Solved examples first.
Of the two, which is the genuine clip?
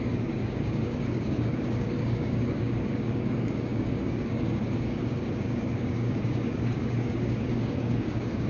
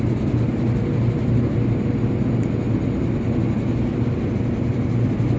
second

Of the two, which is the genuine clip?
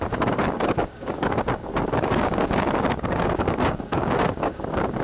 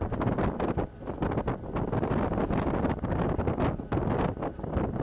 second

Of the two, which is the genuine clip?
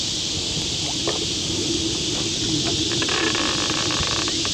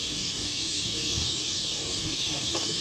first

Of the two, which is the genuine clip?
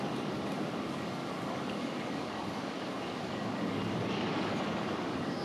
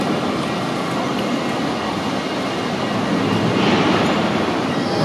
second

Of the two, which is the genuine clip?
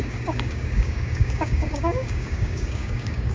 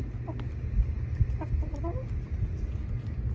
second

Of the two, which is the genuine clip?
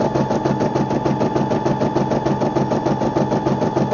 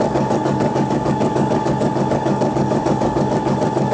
first